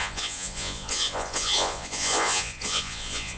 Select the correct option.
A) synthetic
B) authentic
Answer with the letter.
A